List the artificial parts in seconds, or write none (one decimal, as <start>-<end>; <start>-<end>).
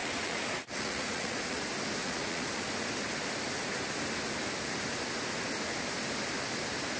0.0-1.6; 2.0-2.6